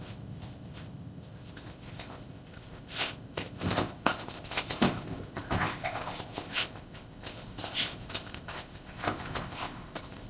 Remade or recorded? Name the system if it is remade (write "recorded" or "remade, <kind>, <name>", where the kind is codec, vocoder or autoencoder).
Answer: remade, codec, ZipCodec